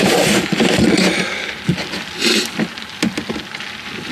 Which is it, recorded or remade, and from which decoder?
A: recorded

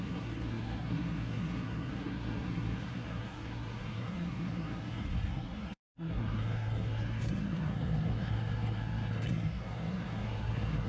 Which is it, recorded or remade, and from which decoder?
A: remade, codec, SNAC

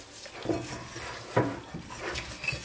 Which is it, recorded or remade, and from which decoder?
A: recorded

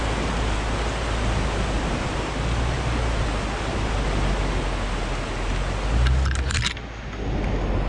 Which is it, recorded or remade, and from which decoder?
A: recorded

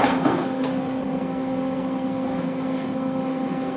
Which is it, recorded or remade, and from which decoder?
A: remade, codec, SNAC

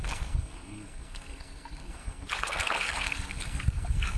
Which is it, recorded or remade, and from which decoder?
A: remade, codec, SNAC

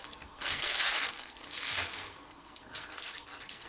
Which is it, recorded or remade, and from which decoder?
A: remade, codec, SNAC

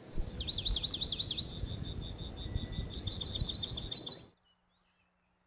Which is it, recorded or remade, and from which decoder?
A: recorded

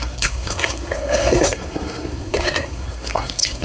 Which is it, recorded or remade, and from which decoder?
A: remade, codec, SNAC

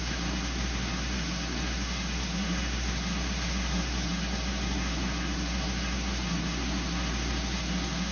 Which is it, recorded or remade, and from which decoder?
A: remade, codec, SNAC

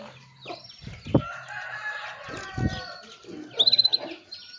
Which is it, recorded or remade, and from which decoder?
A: recorded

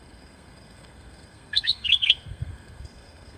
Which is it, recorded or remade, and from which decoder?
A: remade, codec, SNAC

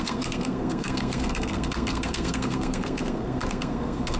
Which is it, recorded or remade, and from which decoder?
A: remade, codec, SNAC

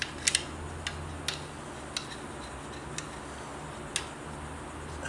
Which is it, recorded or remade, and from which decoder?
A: recorded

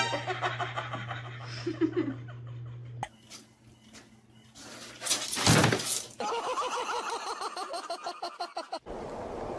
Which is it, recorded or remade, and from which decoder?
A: recorded